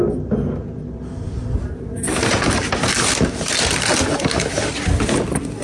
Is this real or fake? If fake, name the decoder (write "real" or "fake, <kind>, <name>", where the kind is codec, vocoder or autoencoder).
real